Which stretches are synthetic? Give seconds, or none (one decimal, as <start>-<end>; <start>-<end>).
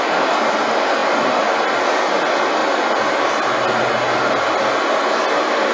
none